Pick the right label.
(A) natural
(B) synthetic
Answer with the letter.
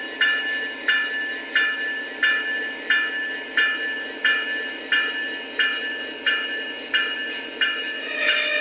A